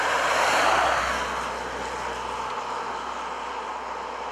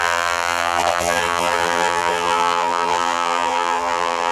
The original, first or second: first